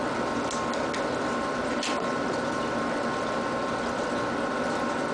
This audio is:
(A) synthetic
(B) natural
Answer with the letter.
B